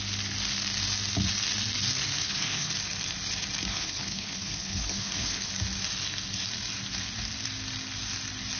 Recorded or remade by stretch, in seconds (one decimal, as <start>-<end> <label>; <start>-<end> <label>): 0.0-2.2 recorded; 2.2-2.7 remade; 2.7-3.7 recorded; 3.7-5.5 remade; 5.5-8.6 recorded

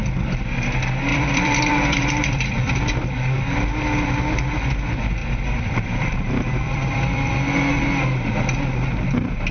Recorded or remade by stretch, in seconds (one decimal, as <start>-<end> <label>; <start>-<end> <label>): 0.0-1.1 recorded; 1.1-2.8 remade; 2.8-5.2 recorded; 5.2-7.9 remade; 7.9-9.5 recorded

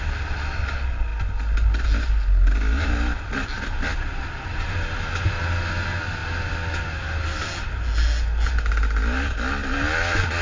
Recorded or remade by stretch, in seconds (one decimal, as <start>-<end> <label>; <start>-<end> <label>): 0.0-10.4 recorded